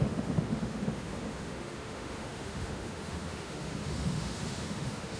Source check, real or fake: fake